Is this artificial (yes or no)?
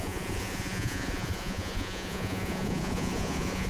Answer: yes